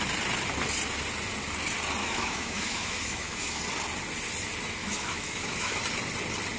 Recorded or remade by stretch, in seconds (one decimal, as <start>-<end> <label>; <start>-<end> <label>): 0.0-2.0 recorded; 2.0-3.6 remade; 3.6-4.8 recorded; 4.8-5.8 remade; 5.8-6.6 recorded